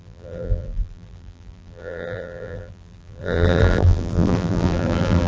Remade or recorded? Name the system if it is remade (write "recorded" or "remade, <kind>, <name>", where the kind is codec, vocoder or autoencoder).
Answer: remade, vocoder, BigVGAN v2